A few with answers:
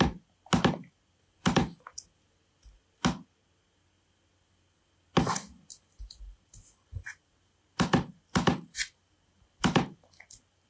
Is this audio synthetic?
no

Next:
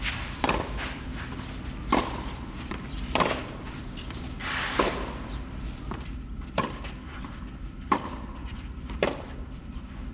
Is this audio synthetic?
yes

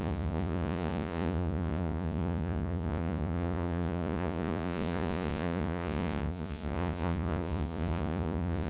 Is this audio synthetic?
yes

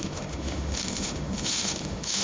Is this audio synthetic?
yes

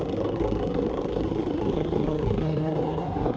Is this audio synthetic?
yes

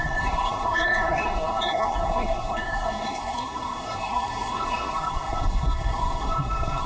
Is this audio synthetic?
yes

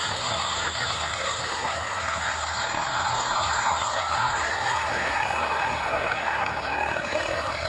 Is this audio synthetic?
yes